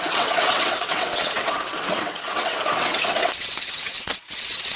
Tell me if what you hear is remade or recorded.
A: remade